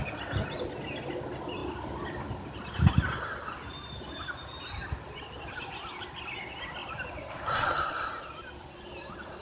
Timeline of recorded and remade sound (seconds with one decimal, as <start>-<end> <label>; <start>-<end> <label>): 0.0-6.8 recorded; 6.8-8.2 remade; 8.2-9.4 recorded